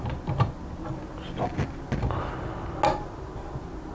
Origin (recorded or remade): recorded